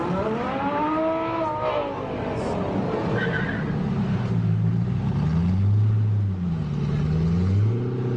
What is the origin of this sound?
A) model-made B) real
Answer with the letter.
B